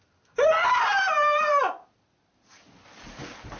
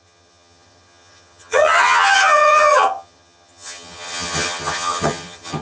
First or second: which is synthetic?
second